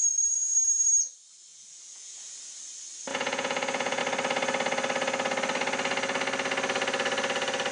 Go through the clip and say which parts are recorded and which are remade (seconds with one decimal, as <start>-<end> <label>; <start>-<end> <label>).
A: 0.0-1.5 recorded; 1.5-2.3 remade; 2.3-3.1 recorded; 3.1-4.0 remade; 4.0-7.7 recorded